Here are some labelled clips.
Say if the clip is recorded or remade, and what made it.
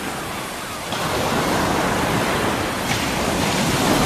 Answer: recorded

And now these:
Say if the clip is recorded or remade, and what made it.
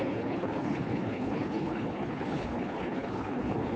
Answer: remade, codec, HILCodec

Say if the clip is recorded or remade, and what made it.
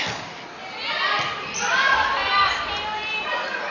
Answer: recorded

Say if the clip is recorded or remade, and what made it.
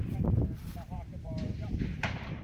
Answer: remade, vocoder, BigVGAN v2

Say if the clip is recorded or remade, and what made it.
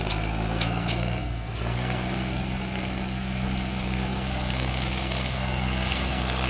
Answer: remade, codec, SNAC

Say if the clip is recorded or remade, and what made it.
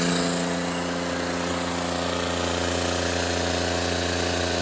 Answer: recorded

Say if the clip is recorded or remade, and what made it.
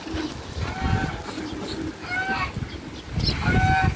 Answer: recorded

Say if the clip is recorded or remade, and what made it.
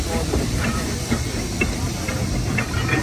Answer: recorded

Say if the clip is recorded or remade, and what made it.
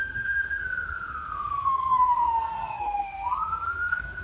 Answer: remade, codec, SNAC